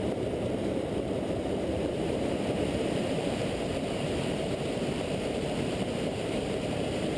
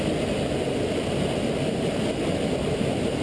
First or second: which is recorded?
second